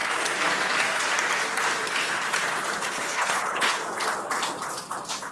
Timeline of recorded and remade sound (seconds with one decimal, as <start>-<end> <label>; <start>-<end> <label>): 0.0-2.9 recorded; 2.9-3.8 remade; 3.8-5.3 recorded